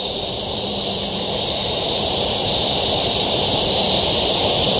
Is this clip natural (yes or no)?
no